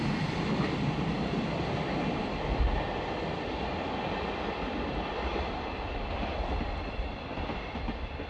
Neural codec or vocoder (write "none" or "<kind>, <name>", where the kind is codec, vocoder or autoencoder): none